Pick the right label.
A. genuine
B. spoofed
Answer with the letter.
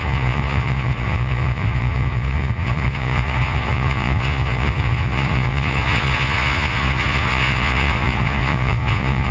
B